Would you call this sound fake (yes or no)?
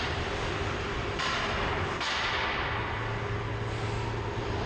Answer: no